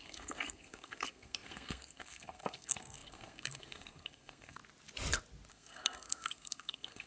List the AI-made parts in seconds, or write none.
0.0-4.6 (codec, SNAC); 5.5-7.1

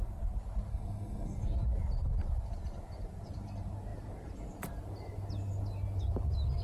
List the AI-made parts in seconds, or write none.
0.7-1.4 (codec, SNAC)

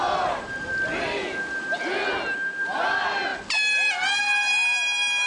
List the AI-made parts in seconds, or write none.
none

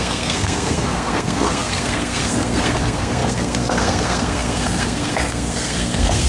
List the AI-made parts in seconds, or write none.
0.0-6.3 (codec, SNAC)